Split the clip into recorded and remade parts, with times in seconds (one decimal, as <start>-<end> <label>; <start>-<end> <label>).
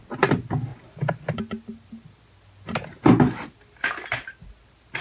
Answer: 0.0-5.0 recorded